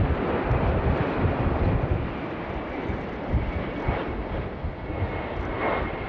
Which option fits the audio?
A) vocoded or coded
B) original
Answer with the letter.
B